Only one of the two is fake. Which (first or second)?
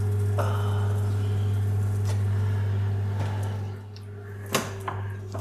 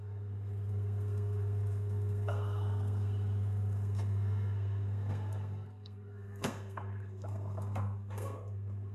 second